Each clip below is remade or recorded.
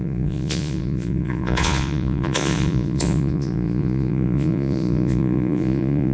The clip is remade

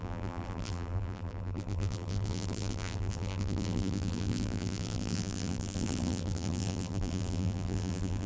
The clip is remade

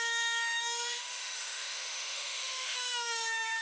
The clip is remade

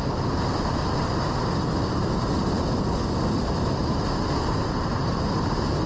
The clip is recorded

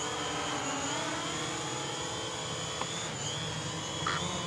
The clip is recorded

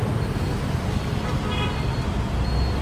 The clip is recorded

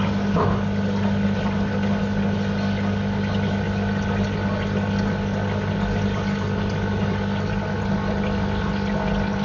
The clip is recorded